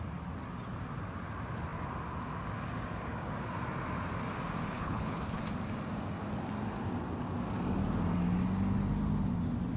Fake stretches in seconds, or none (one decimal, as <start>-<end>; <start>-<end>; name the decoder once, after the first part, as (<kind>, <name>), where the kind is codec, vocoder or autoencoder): 4.7-5.4 (codec, HILCodec)